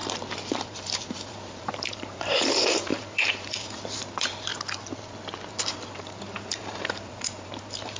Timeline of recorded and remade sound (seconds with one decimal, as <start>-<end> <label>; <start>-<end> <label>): 0.0-0.7 recorded; 0.7-4.5 remade; 4.5-5.5 recorded; 5.5-8.0 remade